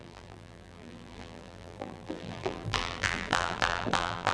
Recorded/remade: remade